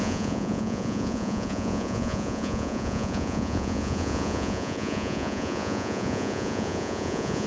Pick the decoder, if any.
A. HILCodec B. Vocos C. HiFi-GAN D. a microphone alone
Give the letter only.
B